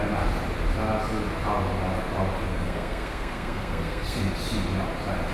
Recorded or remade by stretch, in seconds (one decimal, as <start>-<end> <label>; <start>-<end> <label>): 0.0-2.5 recorded; 2.5-4.2 remade; 4.2-5.3 recorded